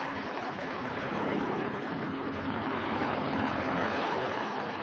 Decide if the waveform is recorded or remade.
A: remade